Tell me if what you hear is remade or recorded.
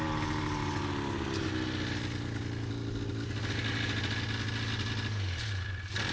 recorded